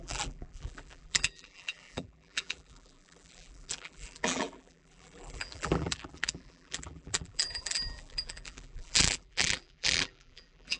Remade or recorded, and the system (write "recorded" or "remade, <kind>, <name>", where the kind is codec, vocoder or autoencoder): remade, vocoder, BigVGAN v2